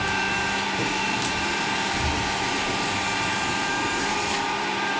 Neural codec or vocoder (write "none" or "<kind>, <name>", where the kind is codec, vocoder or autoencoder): vocoder, BigVGAN v2